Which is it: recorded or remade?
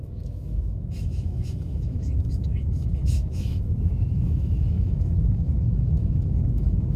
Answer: remade